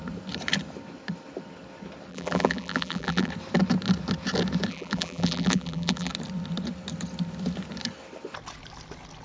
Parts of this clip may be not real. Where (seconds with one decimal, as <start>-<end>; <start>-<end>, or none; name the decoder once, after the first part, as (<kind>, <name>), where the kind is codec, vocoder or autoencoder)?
2.1-3.3 (vocoder, BigVGAN v2); 4.7-6.1